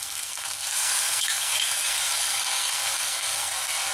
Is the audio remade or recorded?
remade